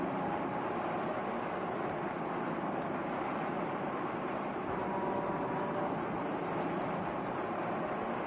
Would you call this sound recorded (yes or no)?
yes